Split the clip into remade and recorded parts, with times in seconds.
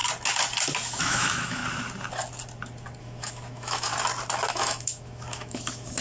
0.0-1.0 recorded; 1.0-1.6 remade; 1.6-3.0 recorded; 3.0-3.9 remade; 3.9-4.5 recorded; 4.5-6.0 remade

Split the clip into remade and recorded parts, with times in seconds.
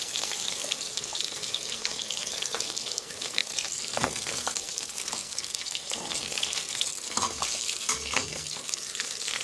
0.0-9.4 remade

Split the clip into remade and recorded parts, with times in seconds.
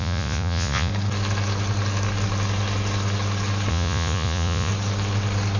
0.0-0.9 remade; 0.9-3.7 recorded; 3.7-4.7 remade; 4.7-5.6 recorded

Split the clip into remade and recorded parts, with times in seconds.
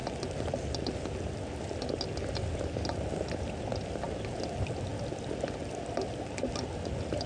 0.0-7.3 recorded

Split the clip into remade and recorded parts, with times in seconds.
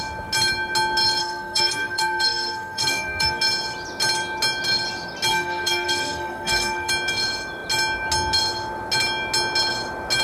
0.0-1.2 recorded; 1.2-3.4 remade; 3.4-5.3 recorded; 5.3-6.9 remade; 6.9-10.2 recorded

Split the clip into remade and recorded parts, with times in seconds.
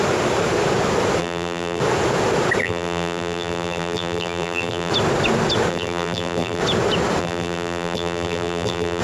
0.0-1.2 recorded; 1.2-1.8 remade; 1.8-2.6 recorded; 2.6-4.9 remade; 4.9-5.7 recorded; 5.7-6.6 remade; 6.6-7.2 recorded; 7.2-9.0 remade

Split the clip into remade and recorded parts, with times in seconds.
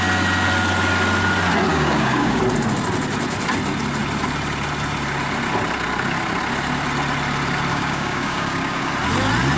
0.0-1.7 recorded; 1.7-2.4 remade; 2.4-7.7 recorded; 7.7-8.9 remade; 8.9-9.6 recorded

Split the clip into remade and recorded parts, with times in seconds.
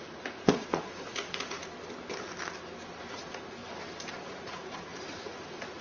0.0-1.6 remade; 1.6-3.1 recorded; 3.1-3.6 remade; 3.6-4.1 recorded; 4.1-5.8 remade